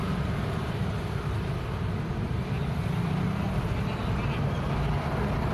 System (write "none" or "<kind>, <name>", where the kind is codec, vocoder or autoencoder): vocoder, BigVGAN v2